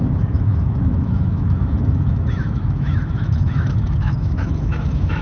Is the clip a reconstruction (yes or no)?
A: yes